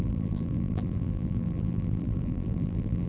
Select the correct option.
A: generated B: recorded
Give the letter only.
A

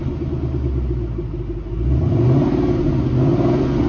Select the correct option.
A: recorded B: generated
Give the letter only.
A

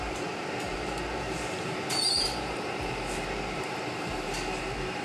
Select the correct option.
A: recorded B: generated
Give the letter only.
B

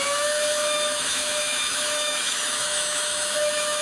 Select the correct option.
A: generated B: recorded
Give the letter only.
A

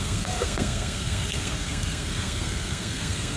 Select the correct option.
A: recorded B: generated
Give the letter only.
B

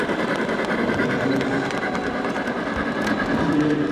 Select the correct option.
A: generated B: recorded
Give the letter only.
B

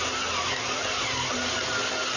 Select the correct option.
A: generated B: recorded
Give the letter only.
B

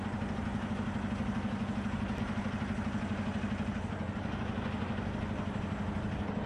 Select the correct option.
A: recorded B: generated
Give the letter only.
A